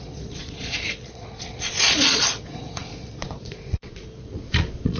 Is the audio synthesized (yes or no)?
yes